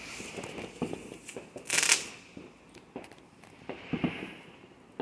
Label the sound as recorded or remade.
recorded